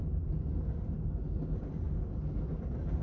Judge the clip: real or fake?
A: real